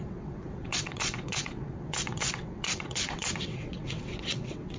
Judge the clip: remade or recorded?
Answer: remade